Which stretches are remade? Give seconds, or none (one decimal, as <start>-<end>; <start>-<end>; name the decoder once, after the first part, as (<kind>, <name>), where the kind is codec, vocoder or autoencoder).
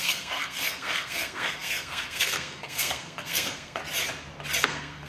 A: 0.0-3.8 (codec, SNAC); 4.6-5.1